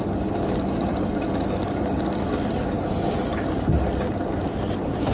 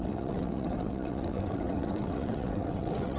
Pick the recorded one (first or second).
first